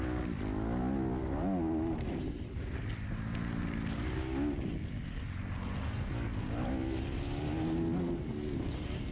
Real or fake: real